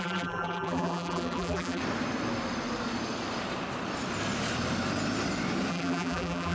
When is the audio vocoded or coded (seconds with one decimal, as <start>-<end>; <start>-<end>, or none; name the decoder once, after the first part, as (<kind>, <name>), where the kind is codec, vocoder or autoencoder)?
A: 0.0-1.8 (vocoder, BigVGAN v2); 5.7-6.5